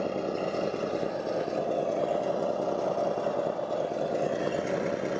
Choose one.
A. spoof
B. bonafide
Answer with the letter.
B